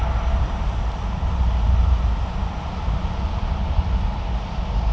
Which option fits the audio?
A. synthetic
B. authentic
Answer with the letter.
B